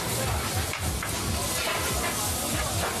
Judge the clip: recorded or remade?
recorded